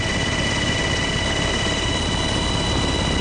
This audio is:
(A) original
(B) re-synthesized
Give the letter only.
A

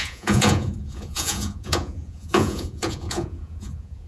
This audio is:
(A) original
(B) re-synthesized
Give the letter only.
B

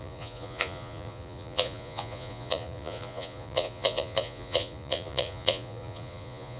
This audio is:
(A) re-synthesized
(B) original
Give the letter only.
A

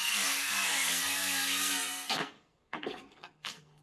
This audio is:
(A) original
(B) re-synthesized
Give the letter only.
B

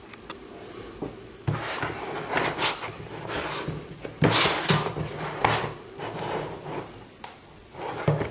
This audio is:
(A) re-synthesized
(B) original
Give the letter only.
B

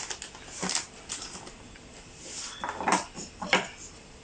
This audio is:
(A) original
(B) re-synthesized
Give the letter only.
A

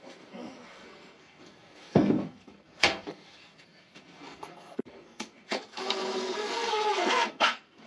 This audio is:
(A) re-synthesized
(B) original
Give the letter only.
A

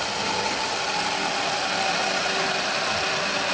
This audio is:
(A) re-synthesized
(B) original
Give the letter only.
B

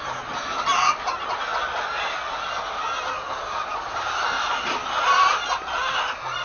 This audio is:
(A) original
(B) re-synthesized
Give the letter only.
A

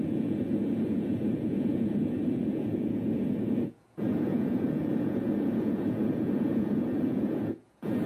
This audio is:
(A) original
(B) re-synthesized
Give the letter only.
B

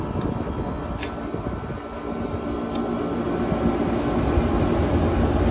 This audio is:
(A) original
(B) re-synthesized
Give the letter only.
A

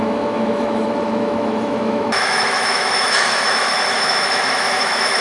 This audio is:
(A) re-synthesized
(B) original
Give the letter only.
A